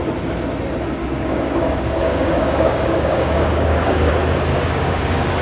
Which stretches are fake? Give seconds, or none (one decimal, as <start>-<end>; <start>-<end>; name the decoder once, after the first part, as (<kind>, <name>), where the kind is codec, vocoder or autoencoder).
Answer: 1.0-4.1 (codec, DAC); 4.5-5.4